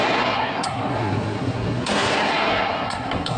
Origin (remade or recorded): remade